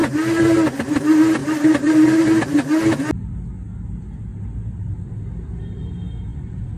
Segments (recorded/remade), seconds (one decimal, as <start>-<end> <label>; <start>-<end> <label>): 0.0-1.4 recorded; 1.4-2.5 remade; 2.5-6.8 recorded